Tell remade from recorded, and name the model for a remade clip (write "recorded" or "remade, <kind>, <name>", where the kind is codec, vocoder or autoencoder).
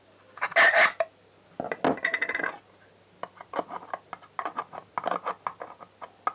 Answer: recorded